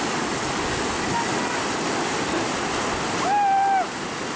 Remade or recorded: recorded